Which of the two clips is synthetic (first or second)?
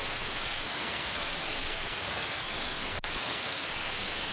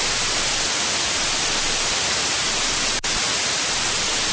first